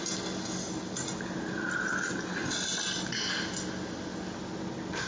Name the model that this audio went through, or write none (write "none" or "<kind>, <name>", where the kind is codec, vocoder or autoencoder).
none